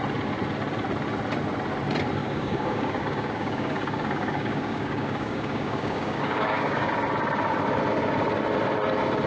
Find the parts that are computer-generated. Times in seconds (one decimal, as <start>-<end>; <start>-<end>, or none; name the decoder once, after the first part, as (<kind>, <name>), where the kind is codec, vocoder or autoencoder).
2.2-6.9 (codec, DAC)